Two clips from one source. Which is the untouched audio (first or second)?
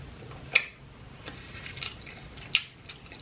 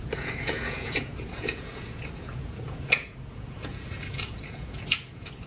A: first